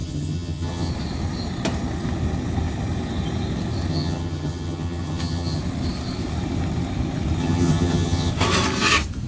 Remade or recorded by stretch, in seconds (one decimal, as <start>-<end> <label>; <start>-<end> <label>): 0.0-0.9 remade; 0.9-3.9 recorded; 3.9-5.6 remade; 5.6-7.4 recorded; 7.4-8.3 remade; 8.3-9.3 recorded